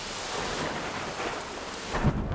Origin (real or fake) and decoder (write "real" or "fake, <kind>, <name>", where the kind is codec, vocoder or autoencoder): fake, vocoder, BigVGAN v2